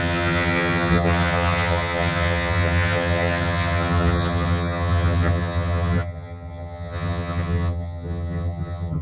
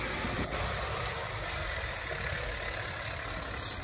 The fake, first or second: first